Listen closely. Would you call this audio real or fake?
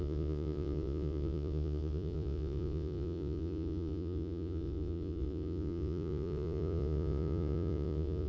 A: fake